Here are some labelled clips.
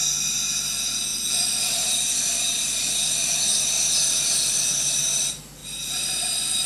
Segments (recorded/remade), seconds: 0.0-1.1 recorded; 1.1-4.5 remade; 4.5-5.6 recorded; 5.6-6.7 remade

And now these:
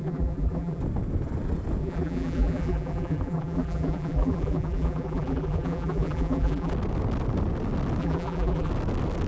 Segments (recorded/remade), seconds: 0.0-0.8 remade; 0.8-1.8 recorded; 1.8-6.7 remade; 6.7-8.0 recorded; 8.0-8.7 remade; 8.7-9.3 recorded